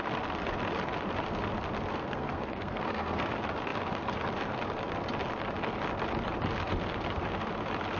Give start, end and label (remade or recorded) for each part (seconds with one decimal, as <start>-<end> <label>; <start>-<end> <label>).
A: 0.0-1.9 recorded; 1.9-3.3 remade; 3.3-8.0 recorded